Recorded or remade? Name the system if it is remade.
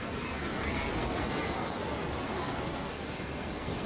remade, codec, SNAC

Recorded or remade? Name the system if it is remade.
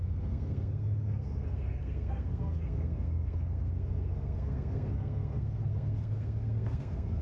remade, codec, SNAC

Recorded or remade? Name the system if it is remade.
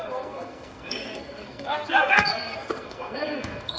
remade, codec, SNAC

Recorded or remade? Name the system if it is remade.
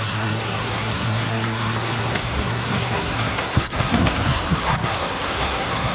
remade, codec, SNAC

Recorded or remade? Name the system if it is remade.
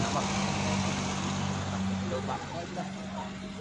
recorded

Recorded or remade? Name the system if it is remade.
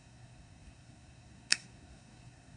remade, codec, SNAC